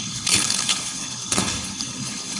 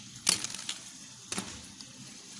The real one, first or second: second